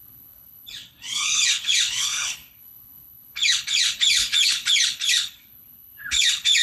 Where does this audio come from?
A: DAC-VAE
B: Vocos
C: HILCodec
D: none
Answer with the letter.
C